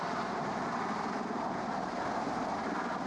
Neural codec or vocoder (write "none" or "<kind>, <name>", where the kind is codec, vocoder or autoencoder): none